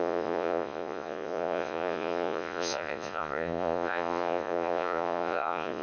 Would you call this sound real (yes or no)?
no